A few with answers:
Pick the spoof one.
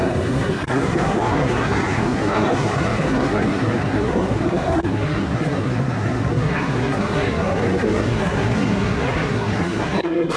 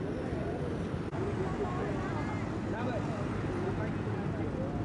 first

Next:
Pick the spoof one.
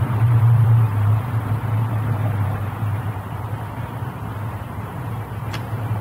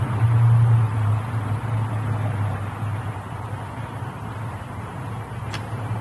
first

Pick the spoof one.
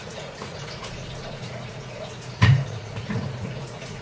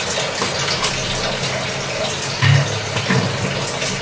first